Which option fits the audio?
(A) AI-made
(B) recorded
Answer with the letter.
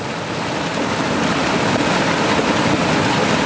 B